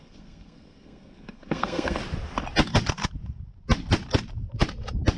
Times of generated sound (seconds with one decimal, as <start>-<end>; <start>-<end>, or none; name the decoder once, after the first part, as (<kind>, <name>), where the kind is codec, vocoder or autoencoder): 0.0-2.0 (codec, SNAC)